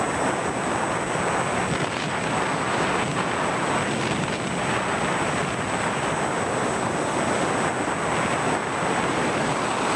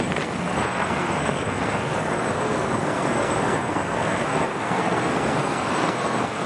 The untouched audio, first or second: first